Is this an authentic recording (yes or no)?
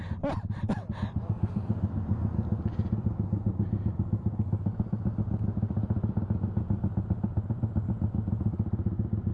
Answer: yes